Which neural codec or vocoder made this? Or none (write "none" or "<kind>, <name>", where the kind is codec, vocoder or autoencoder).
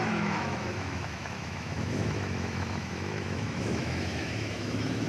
autoencoder, DAC-VAE